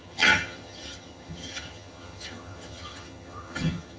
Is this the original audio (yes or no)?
no